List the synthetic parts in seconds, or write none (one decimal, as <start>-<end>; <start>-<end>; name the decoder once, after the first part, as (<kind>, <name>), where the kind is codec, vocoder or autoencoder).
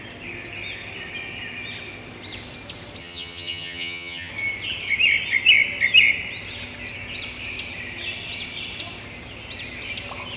3.0-4.3 (vocoder, HiFi-GAN)